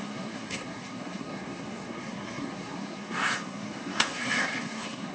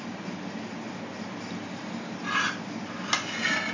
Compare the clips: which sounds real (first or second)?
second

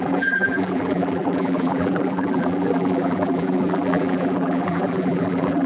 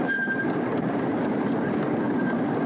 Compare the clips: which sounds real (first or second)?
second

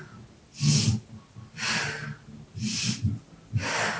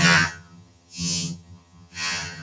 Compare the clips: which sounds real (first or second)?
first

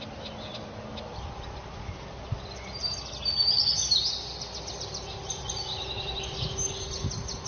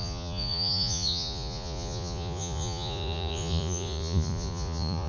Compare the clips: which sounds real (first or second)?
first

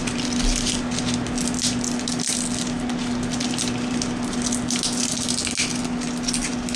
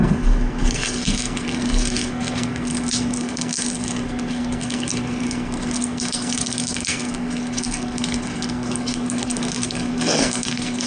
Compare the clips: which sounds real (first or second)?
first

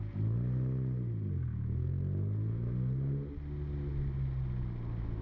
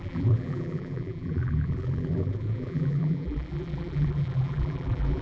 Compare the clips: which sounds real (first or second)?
first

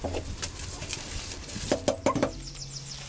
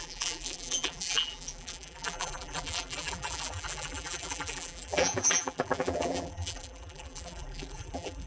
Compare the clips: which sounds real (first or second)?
first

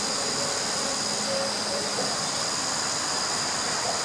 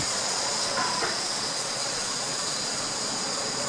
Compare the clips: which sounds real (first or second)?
first